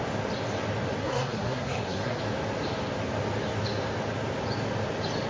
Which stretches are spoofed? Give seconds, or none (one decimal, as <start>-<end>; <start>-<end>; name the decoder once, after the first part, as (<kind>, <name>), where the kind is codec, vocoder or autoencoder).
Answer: 1.0-2.2 (codec, SNAC)